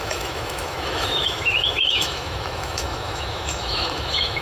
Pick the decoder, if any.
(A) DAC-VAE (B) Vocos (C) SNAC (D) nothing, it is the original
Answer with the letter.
A